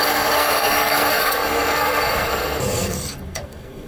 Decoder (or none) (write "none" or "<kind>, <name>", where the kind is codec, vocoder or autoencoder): codec, SNAC